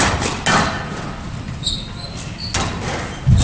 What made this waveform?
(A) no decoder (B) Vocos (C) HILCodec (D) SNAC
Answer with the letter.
A